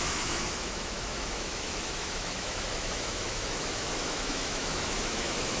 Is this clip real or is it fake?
fake